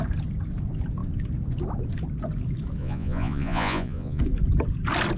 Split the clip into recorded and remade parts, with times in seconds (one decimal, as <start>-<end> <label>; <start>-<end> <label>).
0.0-2.8 recorded; 2.8-4.2 remade; 4.2-5.2 recorded